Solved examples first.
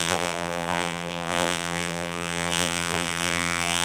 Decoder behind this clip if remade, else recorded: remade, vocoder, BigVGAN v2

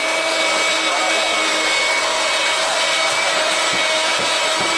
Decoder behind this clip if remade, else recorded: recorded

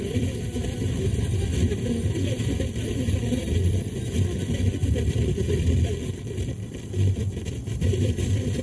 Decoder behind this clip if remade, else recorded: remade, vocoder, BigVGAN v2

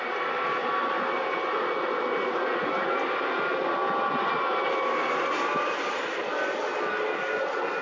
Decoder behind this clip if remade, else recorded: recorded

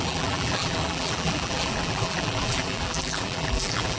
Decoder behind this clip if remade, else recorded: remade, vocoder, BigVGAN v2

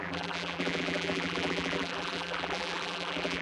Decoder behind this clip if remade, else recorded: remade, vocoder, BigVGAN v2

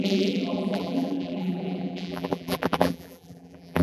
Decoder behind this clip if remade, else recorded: remade, vocoder, BigVGAN v2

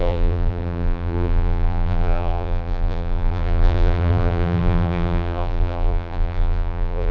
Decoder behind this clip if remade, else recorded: remade, vocoder, BigVGAN v2